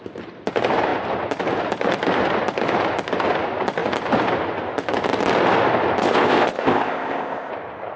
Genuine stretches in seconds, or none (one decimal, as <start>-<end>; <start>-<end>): 0.0-6.0; 7.5-8.0